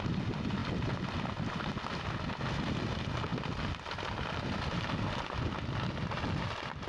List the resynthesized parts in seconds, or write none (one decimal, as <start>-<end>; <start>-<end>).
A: none